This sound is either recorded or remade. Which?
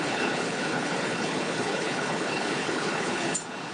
remade